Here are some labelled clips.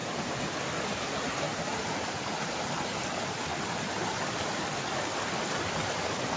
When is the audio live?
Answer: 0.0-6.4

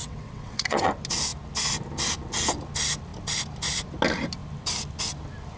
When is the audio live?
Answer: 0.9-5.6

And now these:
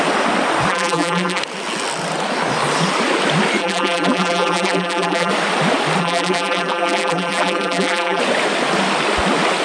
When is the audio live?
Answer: 0.0-0.7; 1.4-3.6; 5.3-6.0; 8.2-9.6

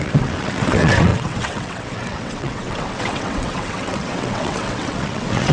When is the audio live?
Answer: none

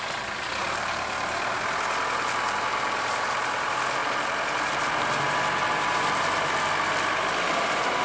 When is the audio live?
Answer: 0.0-0.6; 1.6-4.0; 4.9-8.0

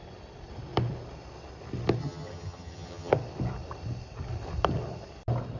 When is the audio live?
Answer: 0.0-2.0; 3.1-5.6

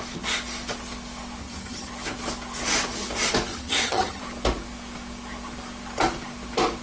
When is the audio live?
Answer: 0.0-1.4; 1.9-3.5; 4.2-6.8

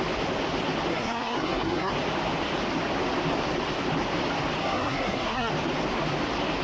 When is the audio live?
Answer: 0.0-0.9; 1.9-4.6; 5.5-6.6